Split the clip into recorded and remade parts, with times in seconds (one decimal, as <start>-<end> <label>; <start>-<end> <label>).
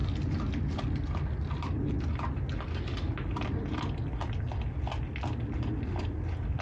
0.0-6.6 recorded